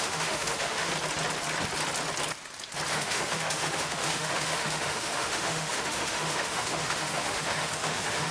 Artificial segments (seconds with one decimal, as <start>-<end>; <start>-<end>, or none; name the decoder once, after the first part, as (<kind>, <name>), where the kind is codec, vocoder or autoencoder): 0.0-0.9 (autoencoder, DAC-VAE); 2.9-8.3